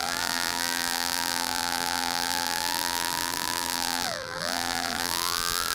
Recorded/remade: remade